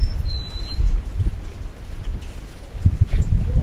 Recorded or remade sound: remade